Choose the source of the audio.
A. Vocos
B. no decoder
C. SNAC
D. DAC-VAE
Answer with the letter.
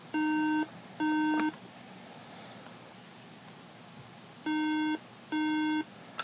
B